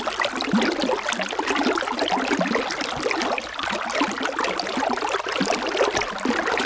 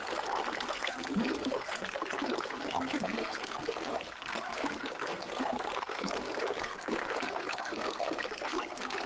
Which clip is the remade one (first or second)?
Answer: second